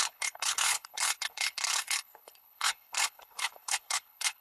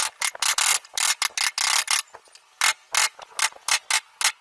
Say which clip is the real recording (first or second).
second